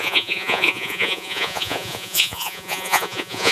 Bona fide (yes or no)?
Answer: no